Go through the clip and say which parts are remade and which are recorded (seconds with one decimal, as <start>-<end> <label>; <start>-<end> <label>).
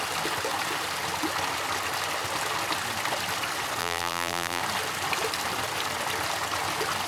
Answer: 0.0-3.8 recorded; 3.8-4.6 remade; 4.6-7.1 recorded